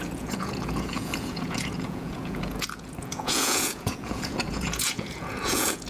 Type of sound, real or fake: fake